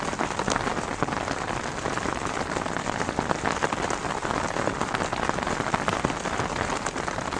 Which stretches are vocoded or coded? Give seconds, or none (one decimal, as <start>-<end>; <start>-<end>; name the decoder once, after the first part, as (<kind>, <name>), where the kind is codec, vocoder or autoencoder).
none